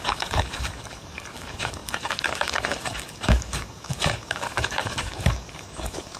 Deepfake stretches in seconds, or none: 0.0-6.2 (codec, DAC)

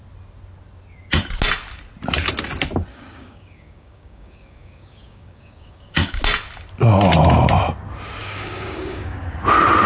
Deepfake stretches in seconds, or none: 2.9-6.2 (codec, DAC); 8.2-9.2

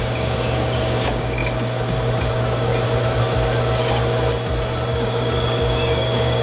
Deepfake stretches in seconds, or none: 0.0-1.4 (codec, DAC); 2.3-2.7; 4.9-6.4

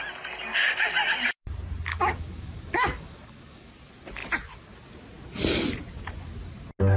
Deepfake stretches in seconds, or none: 1.9-3.7 (codec, DAC)

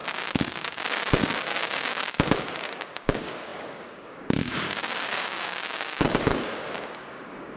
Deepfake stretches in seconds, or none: 0.0-7.6 (codec, DAC)

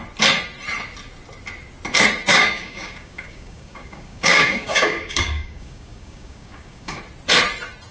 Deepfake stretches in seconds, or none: 2.3-7.0 (codec, DAC)

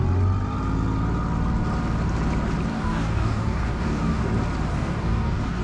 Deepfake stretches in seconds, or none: 2.7-4.2 (codec, DAC); 4.7-5.6